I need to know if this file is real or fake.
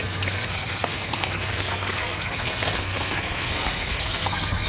fake